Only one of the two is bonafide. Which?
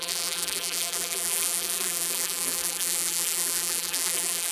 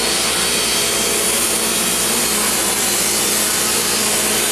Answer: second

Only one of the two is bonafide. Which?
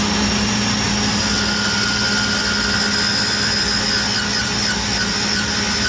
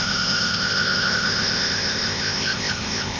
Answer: first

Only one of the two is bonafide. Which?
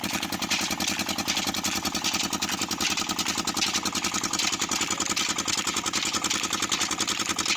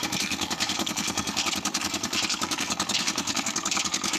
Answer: first